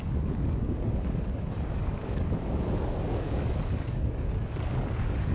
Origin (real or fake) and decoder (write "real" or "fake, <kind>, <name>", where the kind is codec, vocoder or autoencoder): fake, codec, DAC